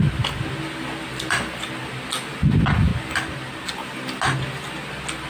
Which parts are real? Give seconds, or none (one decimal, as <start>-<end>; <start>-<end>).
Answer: 0.0-5.3